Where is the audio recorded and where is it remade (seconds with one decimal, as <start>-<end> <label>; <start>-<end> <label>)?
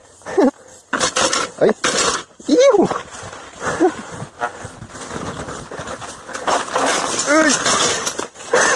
0.0-8.8 recorded